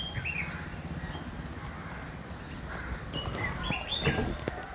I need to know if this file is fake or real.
real